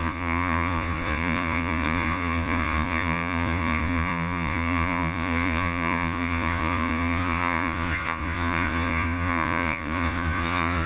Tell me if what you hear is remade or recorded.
remade